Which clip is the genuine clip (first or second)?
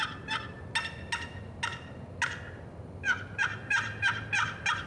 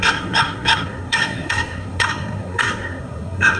first